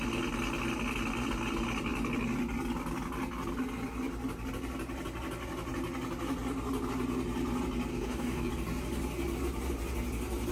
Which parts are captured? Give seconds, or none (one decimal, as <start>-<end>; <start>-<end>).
0.0-7.9; 8.5-10.5